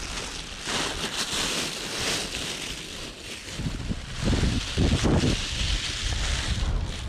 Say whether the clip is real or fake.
real